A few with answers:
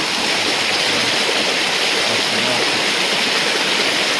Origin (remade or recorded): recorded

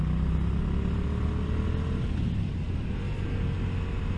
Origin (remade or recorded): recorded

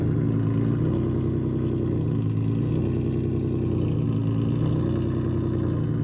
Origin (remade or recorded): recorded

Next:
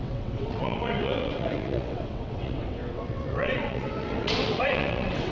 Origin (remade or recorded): remade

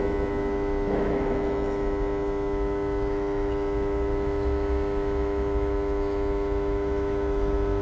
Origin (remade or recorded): remade